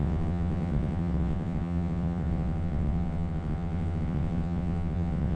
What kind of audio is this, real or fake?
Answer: fake